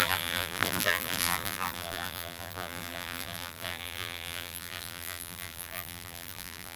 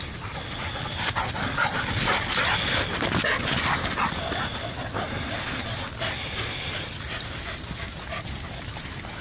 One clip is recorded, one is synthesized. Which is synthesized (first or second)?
first